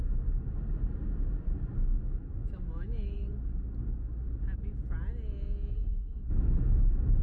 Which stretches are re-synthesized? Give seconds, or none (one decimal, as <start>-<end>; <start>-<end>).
2.4-3.3